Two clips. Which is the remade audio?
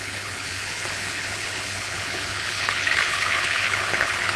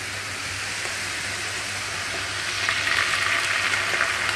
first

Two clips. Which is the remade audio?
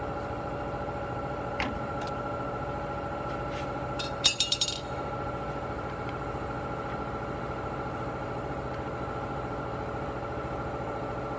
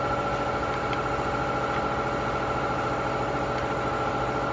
first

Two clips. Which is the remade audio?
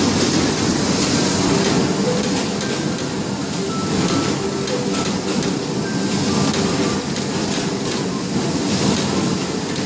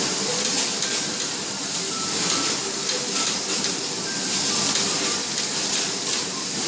second